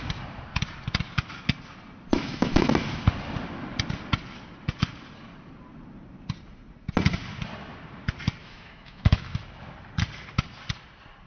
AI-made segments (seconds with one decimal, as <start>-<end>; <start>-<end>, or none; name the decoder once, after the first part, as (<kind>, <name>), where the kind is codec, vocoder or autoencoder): 2.1-2.7 (autoencoder, DAC-VAE); 8.4-9.4